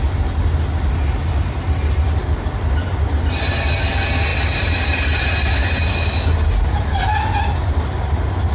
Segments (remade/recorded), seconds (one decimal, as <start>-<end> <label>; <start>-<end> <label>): 0.0-4.3 recorded; 4.3-7.1 remade; 7.1-8.5 recorded